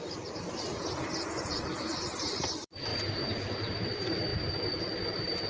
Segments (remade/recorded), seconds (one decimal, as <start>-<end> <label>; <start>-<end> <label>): 0.0-5.5 remade